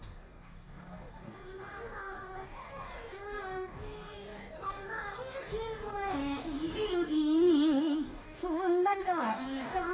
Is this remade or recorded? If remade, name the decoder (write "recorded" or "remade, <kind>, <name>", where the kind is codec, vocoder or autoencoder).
remade, codec, DAC